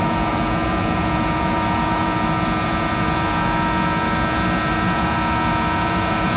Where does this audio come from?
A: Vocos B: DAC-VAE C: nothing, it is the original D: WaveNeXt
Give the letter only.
A